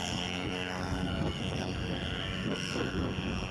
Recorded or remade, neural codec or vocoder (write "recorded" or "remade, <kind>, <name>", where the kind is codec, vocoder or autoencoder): remade, codec, SNAC